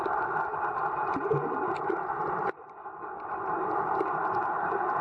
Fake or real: real